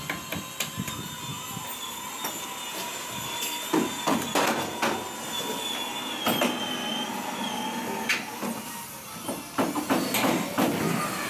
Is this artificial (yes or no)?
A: no